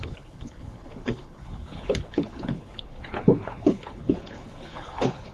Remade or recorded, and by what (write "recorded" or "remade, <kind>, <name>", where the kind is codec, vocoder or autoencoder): remade, codec, HILCodec